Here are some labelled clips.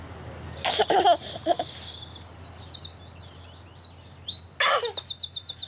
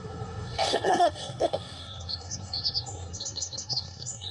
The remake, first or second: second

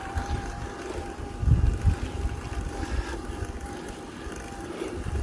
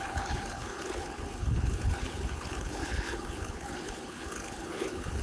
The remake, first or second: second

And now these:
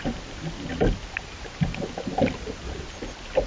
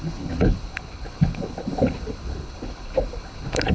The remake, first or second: second